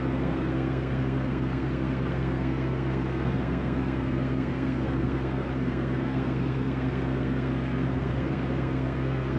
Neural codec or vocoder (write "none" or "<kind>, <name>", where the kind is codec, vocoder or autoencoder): codec, SNAC